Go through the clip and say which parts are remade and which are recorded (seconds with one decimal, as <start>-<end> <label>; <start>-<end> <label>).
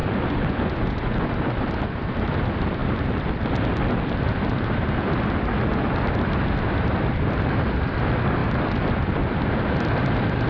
0.0-1.3 remade; 1.3-10.5 recorded